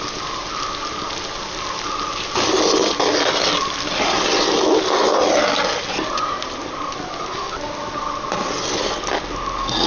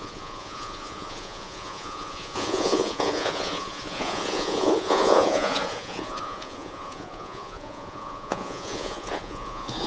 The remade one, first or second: second